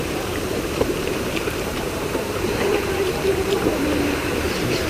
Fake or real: fake